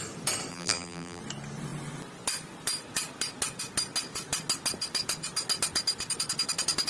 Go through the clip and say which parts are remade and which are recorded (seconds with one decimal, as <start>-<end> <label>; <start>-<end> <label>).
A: 0.0-0.5 recorded; 0.5-1.2 remade; 1.2-6.9 recorded

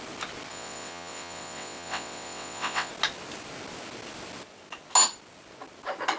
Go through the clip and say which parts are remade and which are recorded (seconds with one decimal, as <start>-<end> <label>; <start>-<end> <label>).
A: 0.0-0.5 recorded; 0.5-2.9 remade; 2.9-6.2 recorded

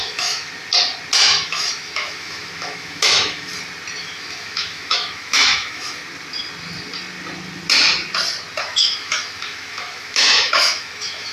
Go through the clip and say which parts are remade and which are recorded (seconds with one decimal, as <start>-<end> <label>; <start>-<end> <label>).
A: 0.0-0.5 remade; 0.5-1.2 recorded; 1.2-3.5 remade; 3.5-4.0 recorded; 4.0-6.0 remade; 6.0-8.6 recorded; 8.6-11.3 remade

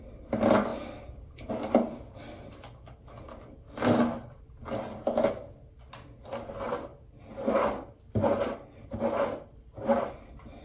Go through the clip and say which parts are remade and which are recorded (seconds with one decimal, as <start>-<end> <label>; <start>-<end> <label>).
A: 0.0-10.6 recorded